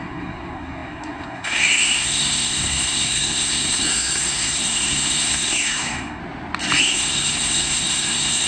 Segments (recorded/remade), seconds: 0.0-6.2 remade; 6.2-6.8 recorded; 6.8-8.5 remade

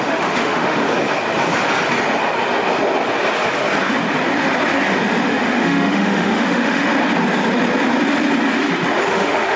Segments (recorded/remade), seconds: 0.0-0.8 remade; 0.8-5.3 recorded; 5.3-6.9 remade; 6.9-9.1 recorded; 9.1-9.6 remade

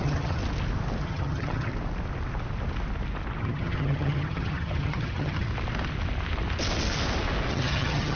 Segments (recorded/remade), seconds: 0.0-0.4 remade; 0.4-1.0 recorded; 1.0-1.7 remade; 1.7-3.4 recorded; 3.4-5.5 remade; 5.5-7.5 recorded; 7.5-8.2 remade

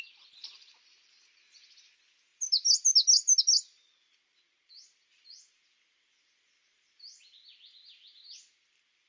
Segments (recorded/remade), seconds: 0.0-9.1 recorded

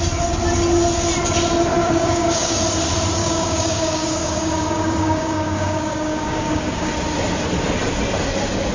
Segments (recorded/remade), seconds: 0.0-1.8 recorded; 1.8-2.6 remade; 2.6-3.2 recorded; 3.2-6.9 remade; 6.9-8.7 recorded

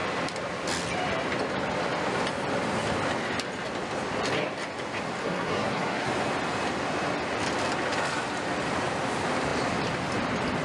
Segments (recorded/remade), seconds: 0.0-5.2 recorded; 5.2-6.1 remade; 6.1-10.6 recorded

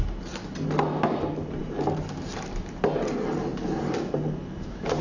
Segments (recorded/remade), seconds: 0.0-1.6 recorded; 1.6-2.3 remade; 2.3-3.5 recorded; 3.5-4.0 remade; 4.0-5.0 recorded

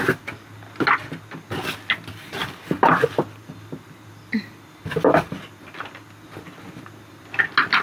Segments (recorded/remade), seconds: 0.0-7.8 recorded